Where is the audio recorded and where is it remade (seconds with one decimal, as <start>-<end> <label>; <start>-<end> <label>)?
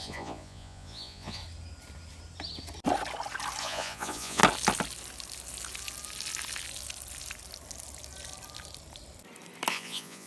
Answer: 0.0-1.4 remade; 1.4-3.6 recorded; 3.6-4.4 remade; 4.4-9.7 recorded; 9.7-10.3 remade